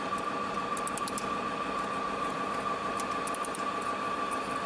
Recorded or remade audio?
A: recorded